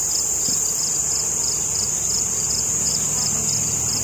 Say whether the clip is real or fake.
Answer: fake